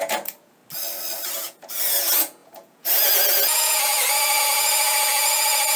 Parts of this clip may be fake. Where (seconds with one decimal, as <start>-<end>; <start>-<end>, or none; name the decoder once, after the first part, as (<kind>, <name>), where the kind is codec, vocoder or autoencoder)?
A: 0.0-0.6 (vocoder, Vocos); 1.3-5.8

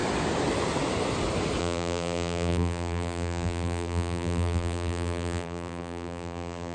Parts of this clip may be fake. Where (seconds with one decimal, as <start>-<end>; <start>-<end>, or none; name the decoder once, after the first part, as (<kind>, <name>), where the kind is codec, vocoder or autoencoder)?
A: 1.6-6.7 (vocoder, BigVGAN v2)

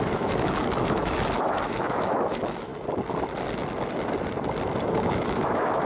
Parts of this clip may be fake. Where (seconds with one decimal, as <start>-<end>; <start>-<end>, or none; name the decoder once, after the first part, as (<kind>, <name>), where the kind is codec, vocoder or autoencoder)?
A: 0.0-2.7 (autoencoder, DAC-VAE); 4.9-5.9

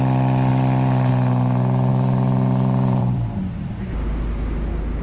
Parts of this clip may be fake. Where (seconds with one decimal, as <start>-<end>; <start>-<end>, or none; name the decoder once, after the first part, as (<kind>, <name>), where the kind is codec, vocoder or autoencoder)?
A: 0.5-1.1 (vocoder, BigVGAN v2); 1.9-3.8

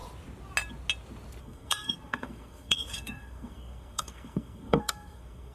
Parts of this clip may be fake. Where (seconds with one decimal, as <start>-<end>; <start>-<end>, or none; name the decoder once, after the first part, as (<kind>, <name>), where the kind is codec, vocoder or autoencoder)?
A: 1.4-5.5 (codec, SNAC)